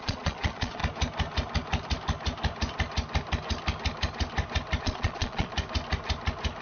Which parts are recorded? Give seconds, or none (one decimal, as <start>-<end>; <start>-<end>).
0.8-4.8; 5.5-6.6